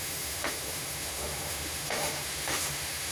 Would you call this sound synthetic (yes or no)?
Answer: yes